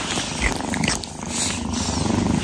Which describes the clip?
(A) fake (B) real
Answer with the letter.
B